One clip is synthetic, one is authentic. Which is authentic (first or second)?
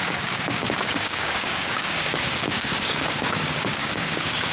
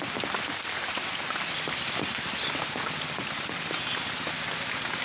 second